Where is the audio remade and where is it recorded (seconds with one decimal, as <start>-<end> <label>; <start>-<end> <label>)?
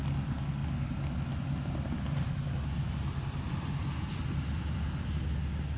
0.0-5.8 recorded